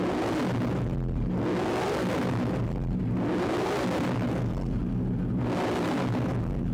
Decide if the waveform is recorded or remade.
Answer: recorded